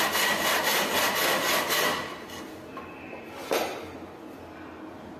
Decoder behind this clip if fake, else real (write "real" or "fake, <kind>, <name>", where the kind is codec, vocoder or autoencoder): real